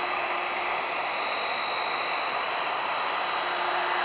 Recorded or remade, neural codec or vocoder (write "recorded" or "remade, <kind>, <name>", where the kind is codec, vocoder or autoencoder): recorded